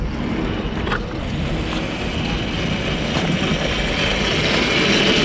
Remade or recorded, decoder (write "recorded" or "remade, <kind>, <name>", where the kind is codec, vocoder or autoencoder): recorded